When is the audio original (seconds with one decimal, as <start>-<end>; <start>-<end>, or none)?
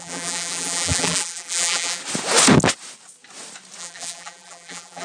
2.0-3.8